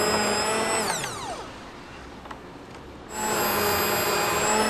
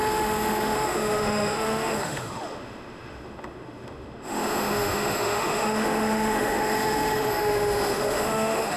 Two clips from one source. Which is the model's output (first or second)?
second